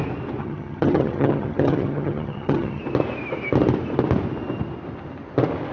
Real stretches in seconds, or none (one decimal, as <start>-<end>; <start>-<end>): 0.0-0.4; 2.8-5.7